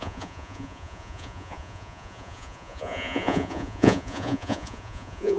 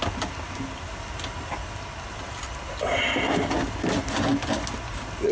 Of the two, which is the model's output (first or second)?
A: first